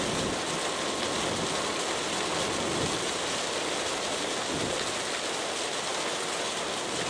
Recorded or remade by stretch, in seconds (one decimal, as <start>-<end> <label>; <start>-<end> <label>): 0.0-7.1 recorded